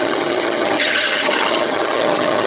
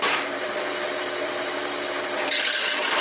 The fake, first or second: first